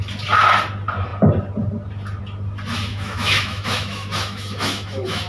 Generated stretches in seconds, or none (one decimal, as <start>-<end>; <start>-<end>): 2.9-5.3